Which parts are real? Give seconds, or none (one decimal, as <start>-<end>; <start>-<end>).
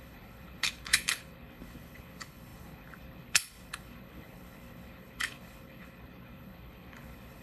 none